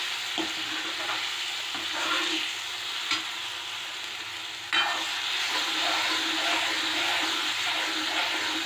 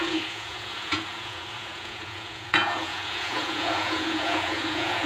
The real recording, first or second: first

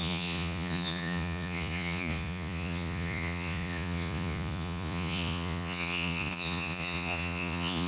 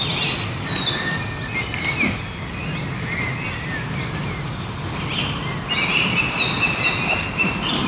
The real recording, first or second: second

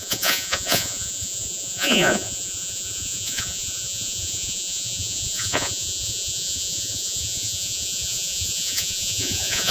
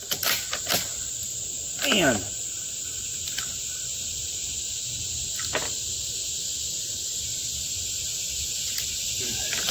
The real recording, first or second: second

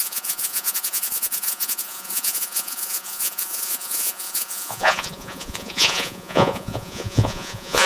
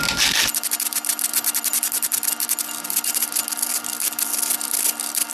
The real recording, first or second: second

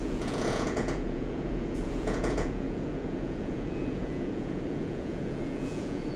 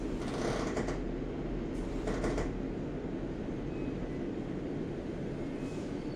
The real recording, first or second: second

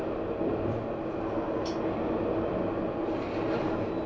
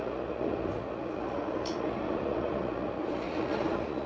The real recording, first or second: first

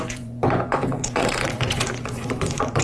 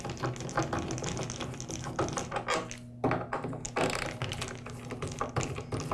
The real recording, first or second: second